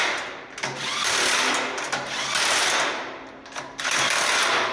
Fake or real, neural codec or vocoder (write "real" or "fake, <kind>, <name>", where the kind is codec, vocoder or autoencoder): real